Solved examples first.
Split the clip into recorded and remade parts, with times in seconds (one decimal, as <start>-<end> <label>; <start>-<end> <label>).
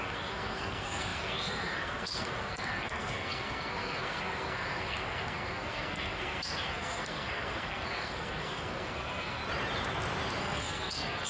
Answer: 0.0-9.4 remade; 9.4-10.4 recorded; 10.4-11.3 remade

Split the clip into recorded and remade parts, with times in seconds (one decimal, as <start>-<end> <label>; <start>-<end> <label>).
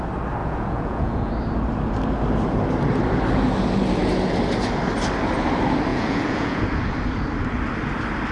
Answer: 0.0-0.4 recorded; 0.4-1.3 remade; 1.3-5.9 recorded; 5.9-6.6 remade; 6.6-8.3 recorded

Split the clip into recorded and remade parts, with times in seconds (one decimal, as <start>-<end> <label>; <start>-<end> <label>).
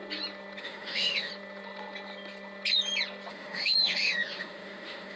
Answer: 0.0-0.6 recorded; 0.6-1.3 remade; 1.3-3.3 recorded; 3.3-5.2 remade